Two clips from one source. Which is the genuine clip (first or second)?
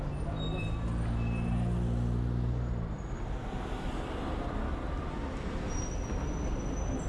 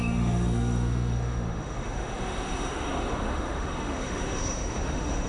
first